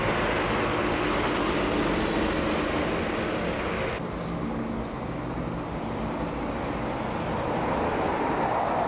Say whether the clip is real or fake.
real